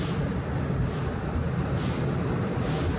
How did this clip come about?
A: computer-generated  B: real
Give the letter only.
B